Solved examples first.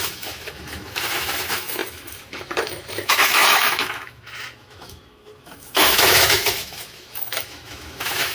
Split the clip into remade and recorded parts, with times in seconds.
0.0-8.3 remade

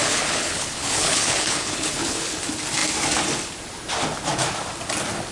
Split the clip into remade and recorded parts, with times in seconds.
0.0-2.4 remade; 2.4-5.3 recorded

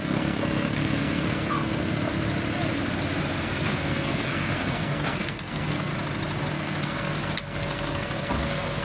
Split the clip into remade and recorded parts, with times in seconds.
0.0-2.1 remade; 2.1-3.4 recorded; 3.4-5.9 remade; 5.9-6.5 recorded; 6.5-8.8 remade

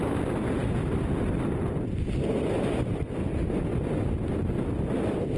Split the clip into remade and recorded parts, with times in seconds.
0.0-5.4 recorded

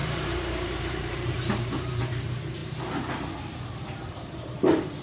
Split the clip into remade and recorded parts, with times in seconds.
0.0-2.6 remade; 2.6-3.5 recorded; 3.5-5.0 remade